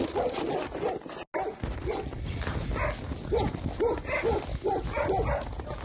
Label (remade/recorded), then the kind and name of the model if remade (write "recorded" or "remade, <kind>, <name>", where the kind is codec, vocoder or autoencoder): recorded